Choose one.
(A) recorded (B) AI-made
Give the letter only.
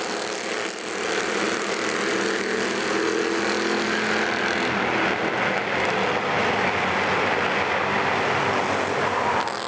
A